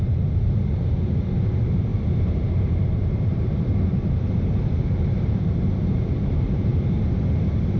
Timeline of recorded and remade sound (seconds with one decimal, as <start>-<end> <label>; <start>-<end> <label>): 0.0-6.7 remade; 6.7-7.8 recorded